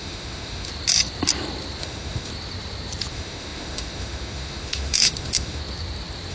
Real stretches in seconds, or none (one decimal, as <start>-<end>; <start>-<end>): 0.7-1.8; 2.3-3.1; 5.6-6.3